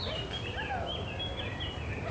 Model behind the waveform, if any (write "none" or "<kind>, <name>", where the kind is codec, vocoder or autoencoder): none